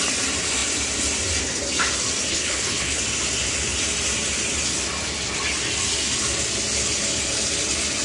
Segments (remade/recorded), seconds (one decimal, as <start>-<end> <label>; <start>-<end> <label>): 0.0-2.3 recorded; 2.3-3.0 remade; 3.0-8.0 recorded